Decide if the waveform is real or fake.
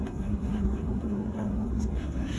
fake